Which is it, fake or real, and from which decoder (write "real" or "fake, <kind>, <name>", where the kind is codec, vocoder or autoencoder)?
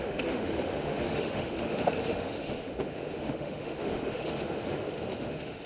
fake, autoencoder, DAC-VAE